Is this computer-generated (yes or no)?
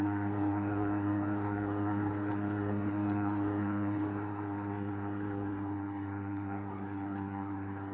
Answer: yes